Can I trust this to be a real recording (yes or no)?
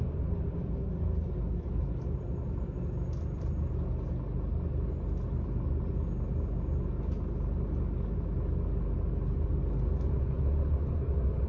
yes